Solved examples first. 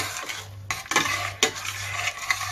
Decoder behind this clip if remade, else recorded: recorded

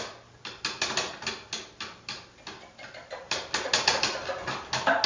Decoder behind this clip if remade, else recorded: recorded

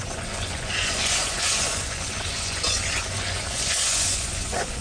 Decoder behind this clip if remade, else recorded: remade, vocoder, Vocos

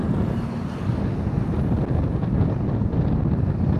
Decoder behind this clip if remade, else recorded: recorded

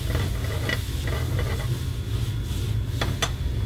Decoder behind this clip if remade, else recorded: recorded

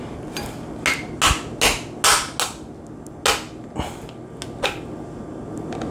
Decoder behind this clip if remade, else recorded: recorded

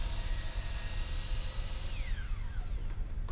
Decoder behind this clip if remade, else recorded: recorded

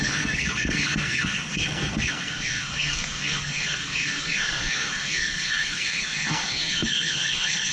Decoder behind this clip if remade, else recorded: remade, codec, SNAC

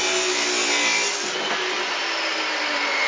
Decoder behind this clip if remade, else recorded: recorded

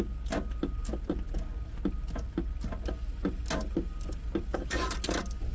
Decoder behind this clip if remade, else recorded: recorded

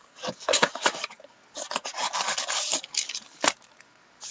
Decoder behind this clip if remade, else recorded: remade, codec, DAC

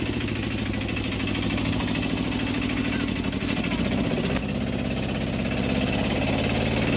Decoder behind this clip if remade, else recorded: recorded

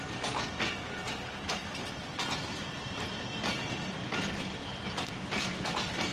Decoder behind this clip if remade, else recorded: recorded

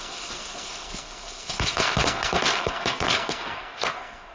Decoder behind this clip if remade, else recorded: remade, codec, SNAC